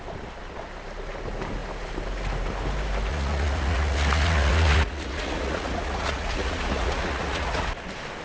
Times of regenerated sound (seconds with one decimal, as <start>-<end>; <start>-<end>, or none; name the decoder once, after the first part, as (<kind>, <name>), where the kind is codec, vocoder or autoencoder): 3.1-7.7 (vocoder, Vocos)